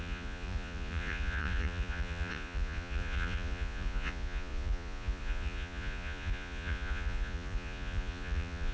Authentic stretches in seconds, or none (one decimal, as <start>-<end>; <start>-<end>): none